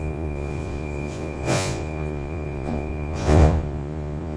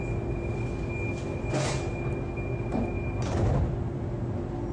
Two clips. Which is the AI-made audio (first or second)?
first